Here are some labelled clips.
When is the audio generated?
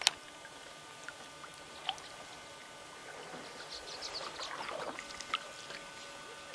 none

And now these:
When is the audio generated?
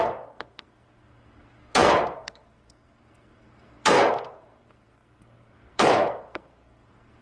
0.0-7.2 (codec, SNAC)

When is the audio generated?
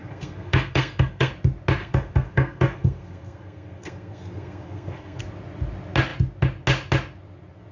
0.0-1.3 (codec, SNAC); 1.8-5.2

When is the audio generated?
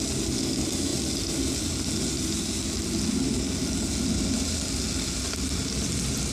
none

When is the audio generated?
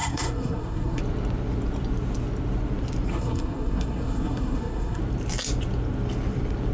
0.0-1.0 (codec, SNAC); 3.1-5.0